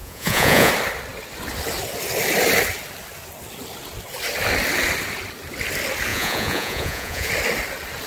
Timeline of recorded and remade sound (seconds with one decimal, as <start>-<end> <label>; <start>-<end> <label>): 0.0-0.7 remade; 0.7-6.1 recorded; 6.1-7.3 remade; 7.3-8.1 recorded